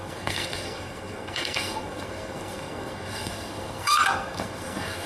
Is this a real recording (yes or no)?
no